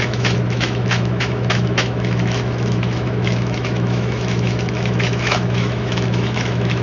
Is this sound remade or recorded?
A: remade